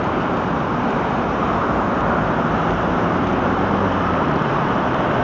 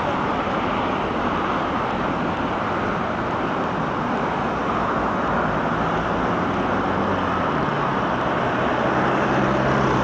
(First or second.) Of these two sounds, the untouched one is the second